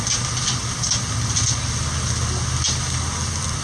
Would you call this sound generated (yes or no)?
no